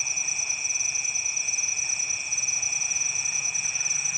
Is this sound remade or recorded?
recorded